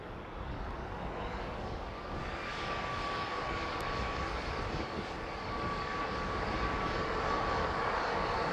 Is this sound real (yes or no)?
no